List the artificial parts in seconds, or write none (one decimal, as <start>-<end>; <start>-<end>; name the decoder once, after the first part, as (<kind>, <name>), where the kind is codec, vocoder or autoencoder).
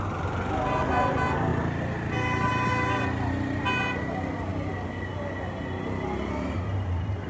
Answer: none